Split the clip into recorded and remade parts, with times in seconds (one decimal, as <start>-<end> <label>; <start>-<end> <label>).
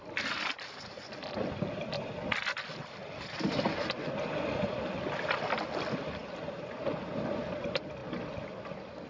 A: 0.0-3.0 recorded; 3.0-3.8 remade; 3.8-9.1 recorded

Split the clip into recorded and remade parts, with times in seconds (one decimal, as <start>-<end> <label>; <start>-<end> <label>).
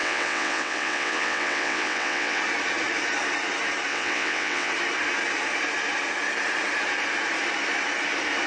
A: 0.0-2.4 remade; 2.4-3.9 recorded; 3.9-4.7 remade; 4.7-8.5 recorded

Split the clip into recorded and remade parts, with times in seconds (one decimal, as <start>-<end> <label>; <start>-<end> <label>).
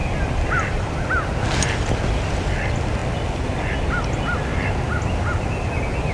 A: 0.0-1.1 remade; 1.1-6.1 recorded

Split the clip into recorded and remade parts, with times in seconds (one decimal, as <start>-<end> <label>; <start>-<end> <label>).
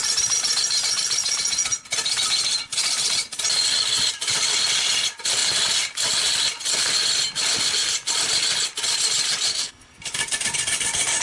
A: 0.0-9.5 recorded; 9.5-10.0 remade; 10.0-11.2 recorded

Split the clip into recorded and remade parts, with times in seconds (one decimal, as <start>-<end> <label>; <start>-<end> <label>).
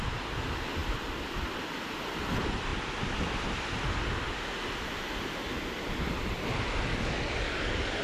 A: 0.0-6.9 recorded; 6.9-8.0 remade